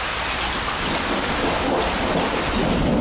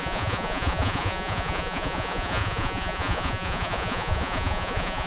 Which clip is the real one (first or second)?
first